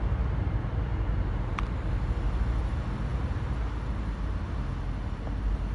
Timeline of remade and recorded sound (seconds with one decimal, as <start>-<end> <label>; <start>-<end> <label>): 0.0-5.7 recorded